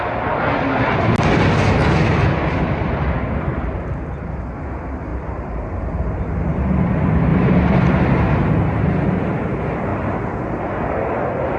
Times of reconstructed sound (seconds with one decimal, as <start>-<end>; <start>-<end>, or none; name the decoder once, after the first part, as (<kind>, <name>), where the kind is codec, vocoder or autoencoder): 5.1-6.2 (vocoder, BigVGAN v2); 7.3-8.9